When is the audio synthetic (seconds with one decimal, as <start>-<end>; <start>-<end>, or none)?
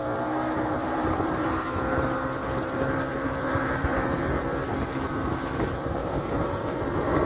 0.7-1.5; 3.1-4.2; 6.0-6.8